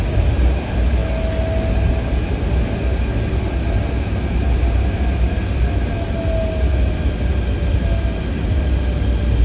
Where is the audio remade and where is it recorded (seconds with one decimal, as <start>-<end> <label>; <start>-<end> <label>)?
0.0-9.4 recorded

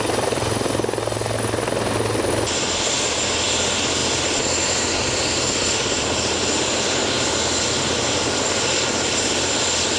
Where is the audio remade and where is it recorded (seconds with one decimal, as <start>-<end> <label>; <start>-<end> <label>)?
0.0-10.0 recorded

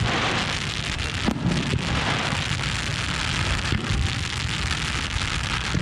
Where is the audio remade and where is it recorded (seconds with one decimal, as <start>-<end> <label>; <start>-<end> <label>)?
0.0-5.8 recorded

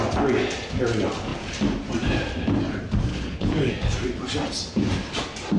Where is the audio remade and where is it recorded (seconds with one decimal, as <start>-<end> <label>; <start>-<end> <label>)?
0.0-3.1 recorded; 3.1-3.7 remade; 3.7-5.6 recorded

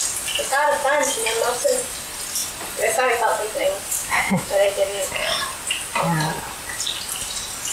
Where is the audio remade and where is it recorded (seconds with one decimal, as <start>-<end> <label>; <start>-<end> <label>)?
0.0-4.0 recorded; 4.0-5.1 remade; 5.1-7.7 recorded

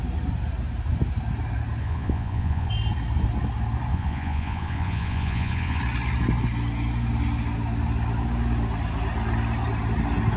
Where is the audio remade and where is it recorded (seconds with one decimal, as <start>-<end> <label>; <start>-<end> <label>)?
0.0-1.8 recorded; 1.8-2.7 remade; 2.7-3.9 recorded; 3.9-5.8 remade; 5.8-10.4 recorded